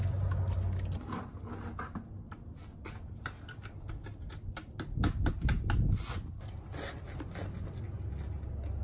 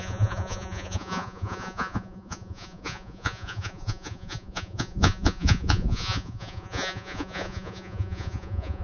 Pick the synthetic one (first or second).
second